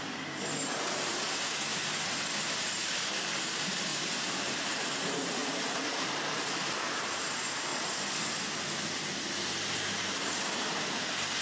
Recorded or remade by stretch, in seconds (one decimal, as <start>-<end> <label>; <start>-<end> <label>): 0.0-1.7 remade; 1.7-2.7 recorded; 2.7-7.7 remade; 7.7-9.3 recorded; 9.3-11.4 remade